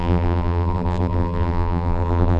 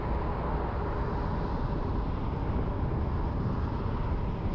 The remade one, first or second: first